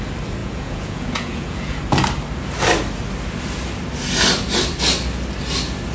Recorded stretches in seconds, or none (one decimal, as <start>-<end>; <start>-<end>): 0.0-0.4; 1.8-5.9